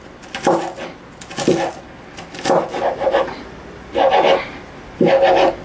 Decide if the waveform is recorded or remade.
recorded